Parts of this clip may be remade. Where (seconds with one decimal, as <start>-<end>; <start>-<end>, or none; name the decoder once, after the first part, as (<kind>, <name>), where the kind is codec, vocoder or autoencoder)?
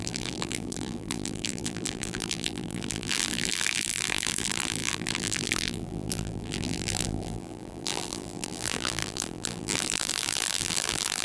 0.0-11.2 (vocoder, BigVGAN v2)